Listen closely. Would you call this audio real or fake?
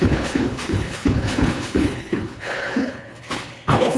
fake